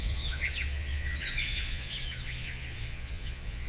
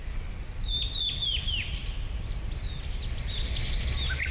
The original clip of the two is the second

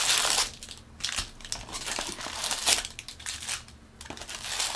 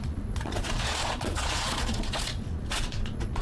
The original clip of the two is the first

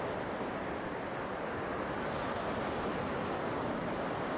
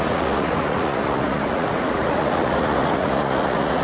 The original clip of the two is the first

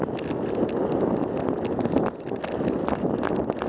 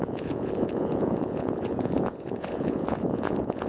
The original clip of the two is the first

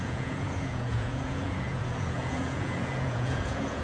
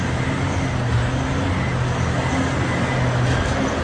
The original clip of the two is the second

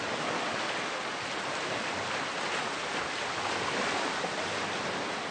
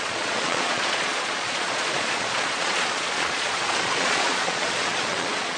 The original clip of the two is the first